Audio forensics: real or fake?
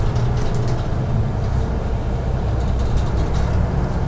real